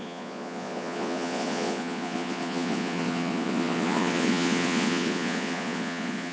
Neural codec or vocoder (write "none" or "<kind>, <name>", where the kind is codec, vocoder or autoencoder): vocoder, Vocos